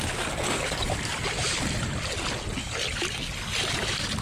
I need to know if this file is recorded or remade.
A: recorded